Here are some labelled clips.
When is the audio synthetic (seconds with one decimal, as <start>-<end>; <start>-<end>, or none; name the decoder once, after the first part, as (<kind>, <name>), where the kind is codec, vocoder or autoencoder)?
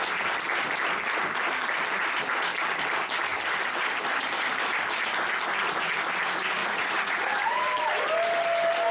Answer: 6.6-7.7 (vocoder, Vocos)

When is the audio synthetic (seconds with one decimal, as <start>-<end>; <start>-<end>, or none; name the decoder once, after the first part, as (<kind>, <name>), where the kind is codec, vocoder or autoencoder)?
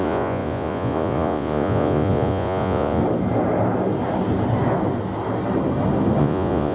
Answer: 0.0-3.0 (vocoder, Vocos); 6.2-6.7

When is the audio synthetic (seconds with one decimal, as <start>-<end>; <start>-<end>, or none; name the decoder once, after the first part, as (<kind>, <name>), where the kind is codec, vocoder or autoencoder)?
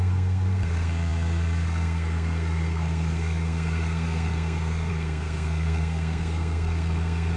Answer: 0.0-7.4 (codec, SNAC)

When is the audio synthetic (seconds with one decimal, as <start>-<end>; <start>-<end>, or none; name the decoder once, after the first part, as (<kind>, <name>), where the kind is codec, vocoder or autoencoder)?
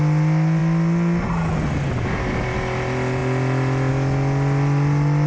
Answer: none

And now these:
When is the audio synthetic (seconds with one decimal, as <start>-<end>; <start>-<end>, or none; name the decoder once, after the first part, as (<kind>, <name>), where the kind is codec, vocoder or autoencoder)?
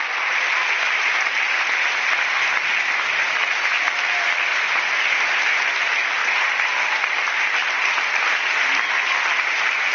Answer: none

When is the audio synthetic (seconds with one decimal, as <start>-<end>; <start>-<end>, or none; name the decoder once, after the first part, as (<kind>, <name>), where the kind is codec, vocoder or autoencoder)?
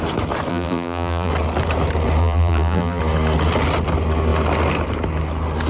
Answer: 0.5-1.3 (vocoder, BigVGAN v2); 2.2-3.0